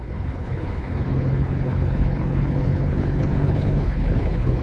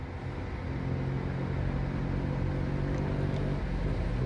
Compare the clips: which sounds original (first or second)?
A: second